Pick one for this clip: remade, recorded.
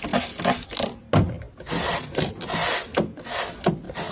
recorded